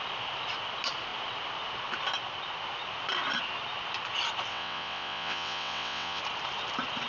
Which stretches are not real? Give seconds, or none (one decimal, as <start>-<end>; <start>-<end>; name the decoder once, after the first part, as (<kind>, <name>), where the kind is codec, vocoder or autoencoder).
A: 4.5-6.2 (vocoder, WaveNeXt)